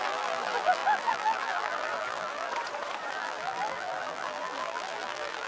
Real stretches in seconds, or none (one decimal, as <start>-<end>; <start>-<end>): 2.5-3.1